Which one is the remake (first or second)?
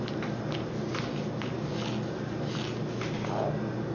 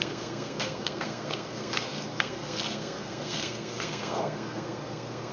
second